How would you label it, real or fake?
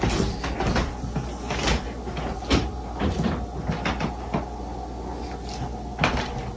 real